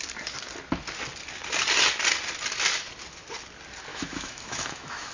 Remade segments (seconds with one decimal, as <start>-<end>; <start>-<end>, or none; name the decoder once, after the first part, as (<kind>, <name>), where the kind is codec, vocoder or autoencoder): 3.9-5.1 (autoencoder, DAC-VAE)